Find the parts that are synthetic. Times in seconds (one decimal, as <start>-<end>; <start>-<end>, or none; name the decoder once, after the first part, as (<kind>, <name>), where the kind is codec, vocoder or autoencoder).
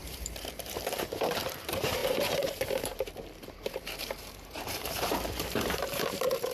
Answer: 0.0-6.5 (vocoder, BigVGAN v2)